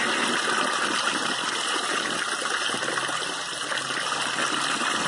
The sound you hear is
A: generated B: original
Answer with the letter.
B